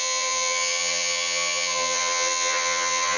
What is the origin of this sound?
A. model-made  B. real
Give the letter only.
A